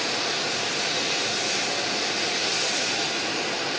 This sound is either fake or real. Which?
real